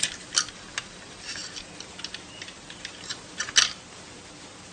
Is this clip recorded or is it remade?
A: recorded